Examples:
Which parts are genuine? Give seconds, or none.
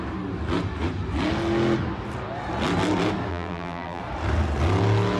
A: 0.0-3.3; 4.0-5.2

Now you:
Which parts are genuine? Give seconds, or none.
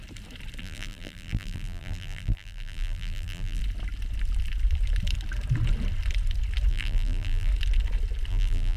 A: 0.0-0.6; 3.6-6.7; 7.5-8.3